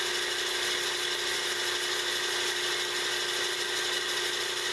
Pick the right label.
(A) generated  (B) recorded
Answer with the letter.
B